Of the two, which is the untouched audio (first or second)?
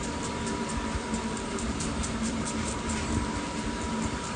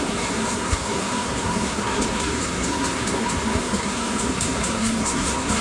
first